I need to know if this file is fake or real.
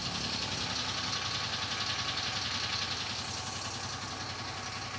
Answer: real